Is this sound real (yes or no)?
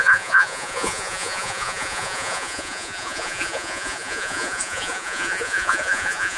no